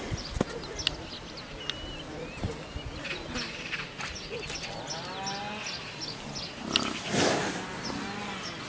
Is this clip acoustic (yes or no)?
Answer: yes